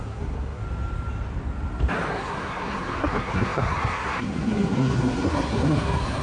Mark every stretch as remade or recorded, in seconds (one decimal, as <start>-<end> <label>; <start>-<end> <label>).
0.0-0.6 remade; 0.6-2.1 recorded; 2.1-6.2 remade

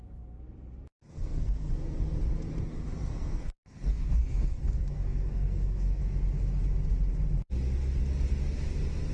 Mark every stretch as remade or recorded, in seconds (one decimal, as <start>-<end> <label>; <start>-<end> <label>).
0.0-0.9 recorded; 0.9-1.7 remade; 1.7-3.1 recorded; 3.1-6.0 remade; 6.0-9.1 recorded

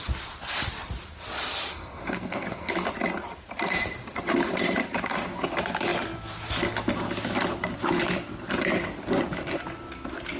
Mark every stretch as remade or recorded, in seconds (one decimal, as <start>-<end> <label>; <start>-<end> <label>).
0.0-1.7 recorded; 1.7-2.7 remade; 2.7-10.4 recorded

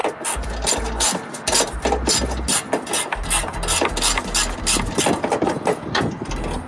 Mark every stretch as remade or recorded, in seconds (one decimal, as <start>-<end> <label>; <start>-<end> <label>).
0.0-6.7 recorded

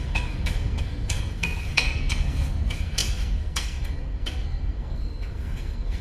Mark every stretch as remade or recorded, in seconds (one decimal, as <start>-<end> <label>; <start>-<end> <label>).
0.0-6.0 remade

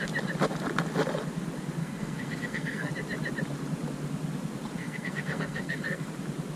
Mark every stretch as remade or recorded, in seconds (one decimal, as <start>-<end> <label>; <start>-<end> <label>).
0.0-1.8 recorded; 1.8-2.9 remade; 2.9-4.8 recorded; 4.8-6.1 remade; 6.1-6.6 recorded

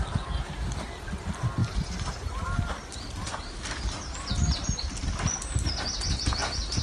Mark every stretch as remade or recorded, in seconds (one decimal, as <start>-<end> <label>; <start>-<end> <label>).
0.0-6.8 recorded